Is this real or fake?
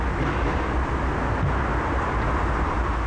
real